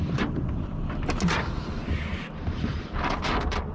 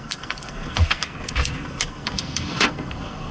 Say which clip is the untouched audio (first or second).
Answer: first